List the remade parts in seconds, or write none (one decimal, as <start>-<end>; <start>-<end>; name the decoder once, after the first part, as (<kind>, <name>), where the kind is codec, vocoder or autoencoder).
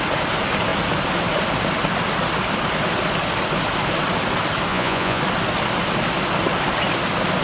4.7-5.2 (vocoder, Vocos)